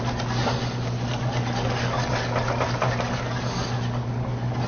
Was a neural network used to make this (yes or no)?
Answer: no